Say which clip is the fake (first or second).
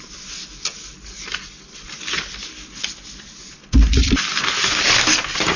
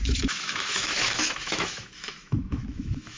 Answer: second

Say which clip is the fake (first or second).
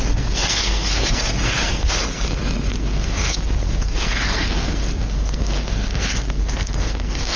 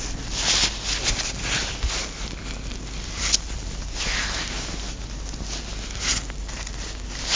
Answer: first